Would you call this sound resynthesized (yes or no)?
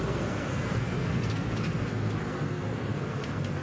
yes